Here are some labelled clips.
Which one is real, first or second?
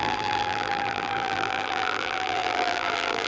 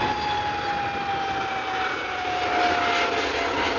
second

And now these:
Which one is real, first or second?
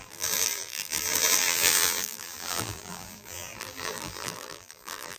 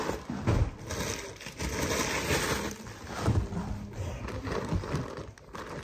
second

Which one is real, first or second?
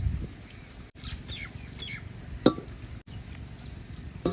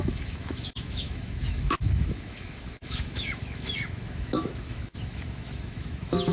first